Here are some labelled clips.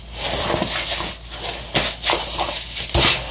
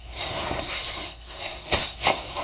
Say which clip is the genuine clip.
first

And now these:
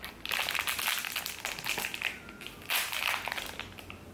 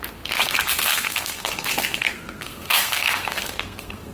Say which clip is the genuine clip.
first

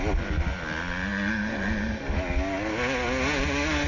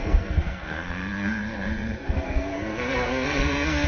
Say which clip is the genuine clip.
first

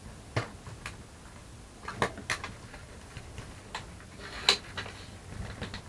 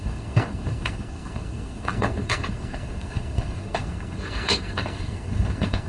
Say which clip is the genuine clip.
first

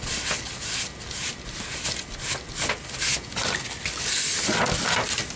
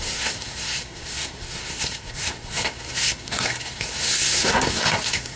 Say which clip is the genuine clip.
first